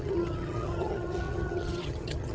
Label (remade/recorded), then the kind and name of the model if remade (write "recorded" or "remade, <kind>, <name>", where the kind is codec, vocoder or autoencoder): remade, vocoder, HiFi-GAN